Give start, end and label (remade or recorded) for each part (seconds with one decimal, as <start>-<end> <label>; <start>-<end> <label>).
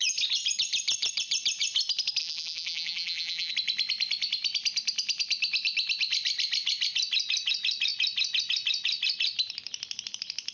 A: 0.0-2.2 recorded; 2.2-3.5 remade; 3.5-10.5 recorded